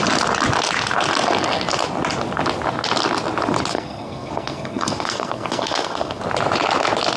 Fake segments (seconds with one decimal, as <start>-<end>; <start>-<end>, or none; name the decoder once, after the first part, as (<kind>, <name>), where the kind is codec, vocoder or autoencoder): 3.7-6.2 (codec, SNAC)